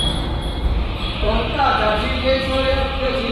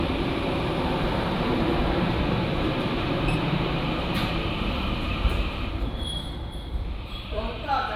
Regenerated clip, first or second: second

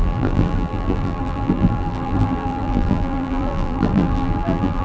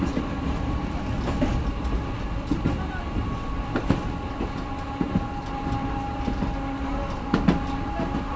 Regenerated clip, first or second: first